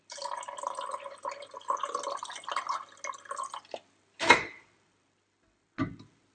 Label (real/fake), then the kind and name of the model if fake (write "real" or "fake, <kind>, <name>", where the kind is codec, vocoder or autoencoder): real